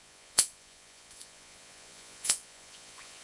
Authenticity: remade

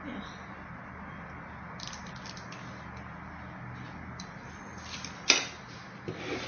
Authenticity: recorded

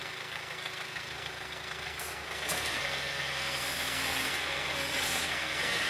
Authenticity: remade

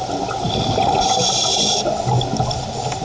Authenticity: recorded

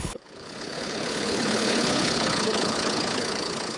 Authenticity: remade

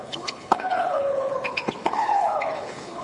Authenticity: remade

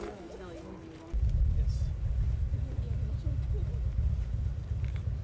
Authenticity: recorded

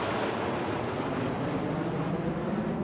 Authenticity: recorded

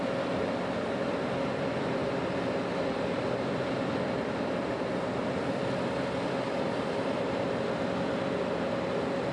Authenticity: remade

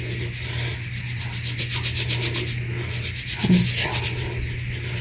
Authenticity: recorded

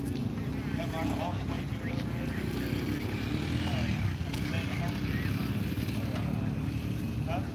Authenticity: recorded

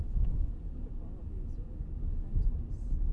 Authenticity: recorded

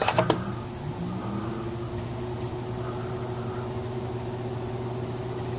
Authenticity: recorded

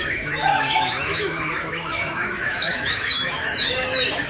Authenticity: remade